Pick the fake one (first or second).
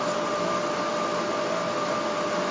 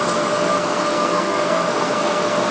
second